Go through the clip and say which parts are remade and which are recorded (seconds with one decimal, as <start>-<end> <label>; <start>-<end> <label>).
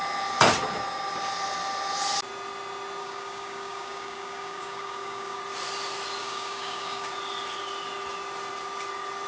0.0-3.0 recorded; 3.0-5.4 remade; 5.4-6.2 recorded; 6.2-7.1 remade; 7.1-9.3 recorded